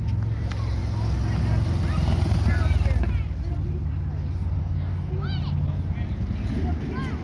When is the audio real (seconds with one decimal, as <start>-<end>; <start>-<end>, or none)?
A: 0.0-4.6; 5.1-7.2